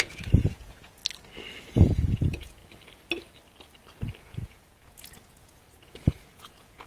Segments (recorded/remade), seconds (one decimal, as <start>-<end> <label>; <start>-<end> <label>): 0.0-1.0 remade; 1.0-1.7 recorded; 1.7-2.6 remade; 2.6-4.2 recorded; 4.2-6.9 remade

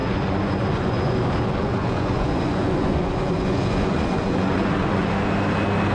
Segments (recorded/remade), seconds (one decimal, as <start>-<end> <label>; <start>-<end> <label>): 0.0-1.2 remade; 1.2-1.6 recorded; 1.6-5.1 remade; 5.1-5.9 recorded